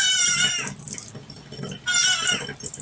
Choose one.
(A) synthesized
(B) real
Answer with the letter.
B